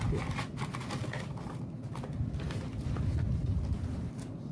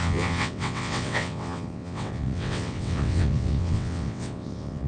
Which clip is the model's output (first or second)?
second